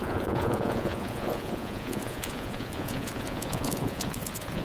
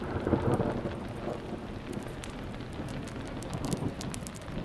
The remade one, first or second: first